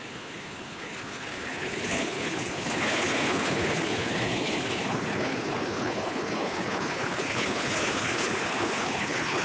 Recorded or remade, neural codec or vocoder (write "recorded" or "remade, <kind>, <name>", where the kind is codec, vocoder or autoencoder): remade, codec, HILCodec